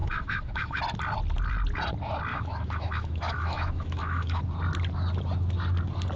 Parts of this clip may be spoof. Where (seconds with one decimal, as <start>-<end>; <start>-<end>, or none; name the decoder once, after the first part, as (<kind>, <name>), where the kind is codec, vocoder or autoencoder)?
0.0-0.8 (autoencoder, DAC-VAE); 2.3-4.4